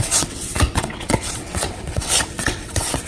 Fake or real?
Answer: fake